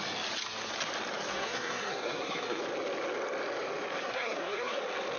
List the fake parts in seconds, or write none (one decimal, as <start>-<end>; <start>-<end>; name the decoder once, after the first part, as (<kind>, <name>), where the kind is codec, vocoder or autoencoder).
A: 1.3-2.6 (codec, SNAC); 4.0-4.8